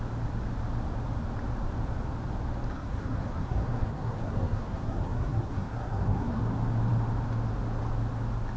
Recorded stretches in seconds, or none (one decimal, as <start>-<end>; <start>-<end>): 0.0-2.7; 6.4-8.6